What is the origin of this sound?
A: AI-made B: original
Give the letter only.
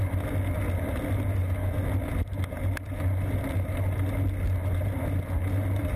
B